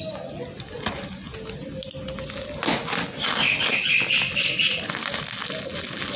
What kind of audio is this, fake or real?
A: real